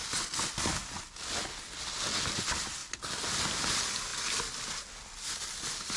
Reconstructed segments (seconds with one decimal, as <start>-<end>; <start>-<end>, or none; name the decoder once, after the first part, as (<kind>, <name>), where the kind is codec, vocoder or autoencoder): none